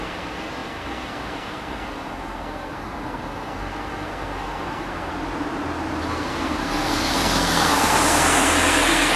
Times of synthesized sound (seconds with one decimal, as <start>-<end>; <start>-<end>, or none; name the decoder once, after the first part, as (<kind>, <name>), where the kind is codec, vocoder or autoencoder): 0.0-5.1 (codec, SNAC); 6.1-9.2